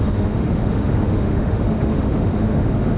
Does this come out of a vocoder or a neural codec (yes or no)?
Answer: yes